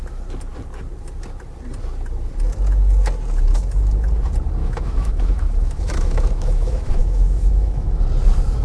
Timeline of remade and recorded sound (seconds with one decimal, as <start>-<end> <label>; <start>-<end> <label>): 0.0-4.6 recorded; 4.6-8.0 remade; 8.0-8.6 recorded